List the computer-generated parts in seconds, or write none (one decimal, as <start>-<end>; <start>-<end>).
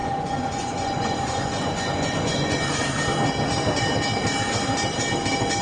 0.0-2.6